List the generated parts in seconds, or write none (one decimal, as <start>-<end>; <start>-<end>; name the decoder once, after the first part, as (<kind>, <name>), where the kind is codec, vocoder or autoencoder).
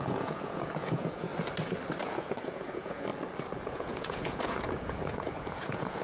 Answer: 0.0-1.3 (vocoder, Vocos); 2.0-3.1; 3.6-6.0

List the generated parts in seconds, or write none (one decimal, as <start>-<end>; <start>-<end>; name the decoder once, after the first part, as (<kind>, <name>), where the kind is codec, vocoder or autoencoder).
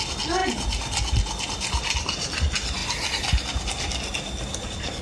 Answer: none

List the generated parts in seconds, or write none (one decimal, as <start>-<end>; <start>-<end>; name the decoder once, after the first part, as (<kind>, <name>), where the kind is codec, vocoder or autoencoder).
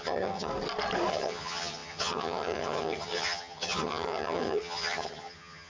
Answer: 0.0-0.5 (vocoder, HiFi-GAN); 1.1-5.7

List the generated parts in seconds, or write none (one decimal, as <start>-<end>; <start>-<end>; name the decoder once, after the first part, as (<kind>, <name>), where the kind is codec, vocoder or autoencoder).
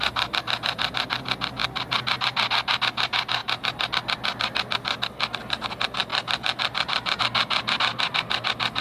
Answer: 3.4-3.9 (vocoder, BigVGAN v2); 6.1-7.2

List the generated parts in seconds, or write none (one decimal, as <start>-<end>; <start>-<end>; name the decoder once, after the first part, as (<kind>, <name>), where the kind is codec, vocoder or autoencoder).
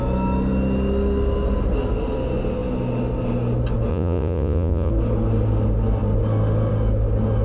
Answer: 3.9-4.9 (vocoder, Vocos)